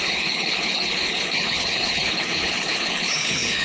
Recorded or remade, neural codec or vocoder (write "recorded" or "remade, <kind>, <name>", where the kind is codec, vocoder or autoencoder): remade, codec, HILCodec